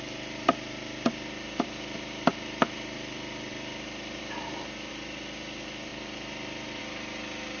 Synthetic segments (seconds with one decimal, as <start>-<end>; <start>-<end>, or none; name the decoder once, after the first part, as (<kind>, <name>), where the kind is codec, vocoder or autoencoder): none